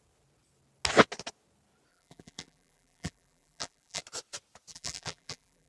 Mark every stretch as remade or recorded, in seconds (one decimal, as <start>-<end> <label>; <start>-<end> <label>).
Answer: 0.0-1.9 recorded; 1.9-4.0 remade; 4.0-4.7 recorded; 4.7-5.7 remade